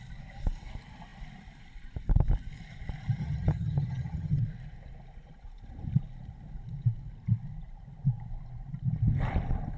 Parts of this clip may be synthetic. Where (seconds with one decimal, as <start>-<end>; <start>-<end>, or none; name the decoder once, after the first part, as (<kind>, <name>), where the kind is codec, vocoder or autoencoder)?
3.2-4.4 (vocoder, HiFi-GAN)